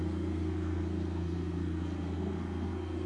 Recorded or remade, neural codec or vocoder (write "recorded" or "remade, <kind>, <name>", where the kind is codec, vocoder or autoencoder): remade, codec, SNAC